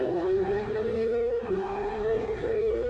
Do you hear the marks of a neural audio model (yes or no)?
yes